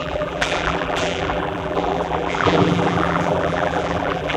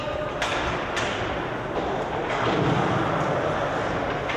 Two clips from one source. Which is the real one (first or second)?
second